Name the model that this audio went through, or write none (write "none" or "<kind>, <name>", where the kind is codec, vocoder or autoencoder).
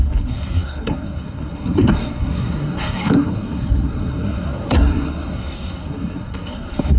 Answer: codec, SNAC